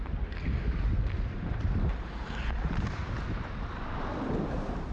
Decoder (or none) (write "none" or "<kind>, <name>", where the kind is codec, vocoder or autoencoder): none